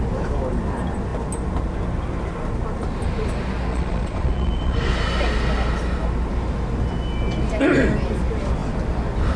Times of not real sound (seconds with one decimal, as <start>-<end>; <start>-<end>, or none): 3.7-4.9